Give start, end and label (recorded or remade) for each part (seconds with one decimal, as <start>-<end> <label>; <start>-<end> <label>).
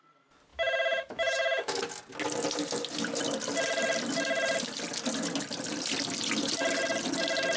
0.0-0.5 recorded; 0.5-1.8 remade; 1.8-7.6 recorded